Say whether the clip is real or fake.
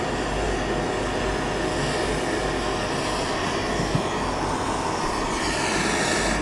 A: real